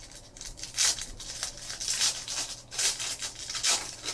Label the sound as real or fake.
real